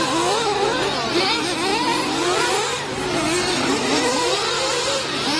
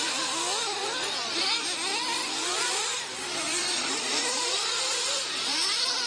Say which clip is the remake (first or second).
second